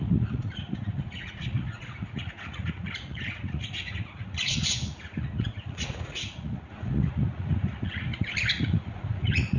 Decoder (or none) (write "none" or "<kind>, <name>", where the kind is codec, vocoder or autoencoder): vocoder, Vocos